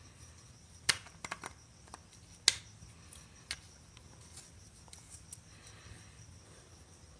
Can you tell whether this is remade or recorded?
recorded